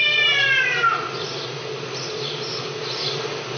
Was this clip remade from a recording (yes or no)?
no